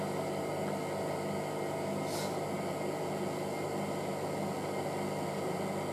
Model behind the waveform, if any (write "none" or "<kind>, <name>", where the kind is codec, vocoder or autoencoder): none